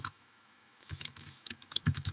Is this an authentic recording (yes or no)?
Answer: no